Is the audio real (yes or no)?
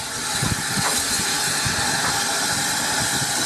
yes